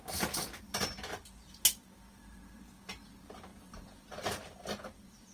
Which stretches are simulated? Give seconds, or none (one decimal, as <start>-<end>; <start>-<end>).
none